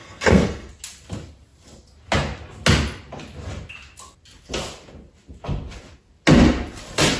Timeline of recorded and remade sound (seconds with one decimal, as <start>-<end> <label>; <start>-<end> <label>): 0.0-0.7 remade; 0.7-7.2 recorded